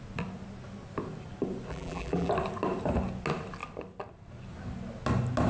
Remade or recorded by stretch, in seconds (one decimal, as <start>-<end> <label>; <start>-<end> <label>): 0.0-1.7 recorded; 1.7-2.3 remade; 2.3-5.5 recorded